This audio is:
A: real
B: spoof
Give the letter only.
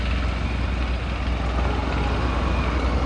A